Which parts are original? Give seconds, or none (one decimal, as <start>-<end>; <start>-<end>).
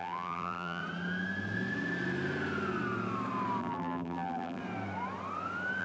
0.8-3.6; 4.6-5.8